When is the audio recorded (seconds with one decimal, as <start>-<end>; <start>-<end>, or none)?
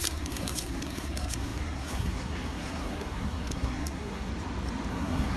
4.3-4.9